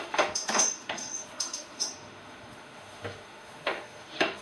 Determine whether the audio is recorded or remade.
remade